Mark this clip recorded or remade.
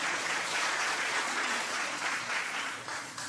remade